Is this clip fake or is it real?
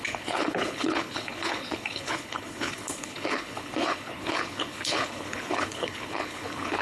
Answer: fake